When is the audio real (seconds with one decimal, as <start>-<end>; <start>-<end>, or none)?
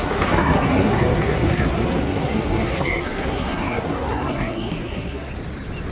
5.3-5.9